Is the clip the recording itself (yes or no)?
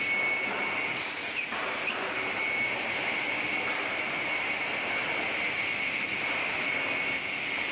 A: yes